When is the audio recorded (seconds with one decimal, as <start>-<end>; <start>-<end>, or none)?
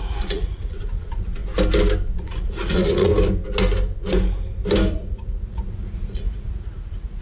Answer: 1.4-2.1; 3.1-4.9